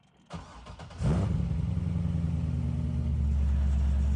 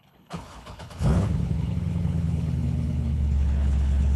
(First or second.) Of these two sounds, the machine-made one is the second